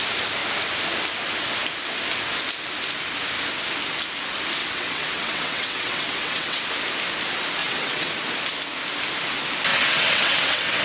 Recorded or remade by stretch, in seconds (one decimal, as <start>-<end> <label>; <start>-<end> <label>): 0.0-4.6 recorded; 4.6-6.6 remade; 6.6-7.6 recorded; 7.6-8.1 remade; 8.1-9.7 recorded; 9.7-10.8 remade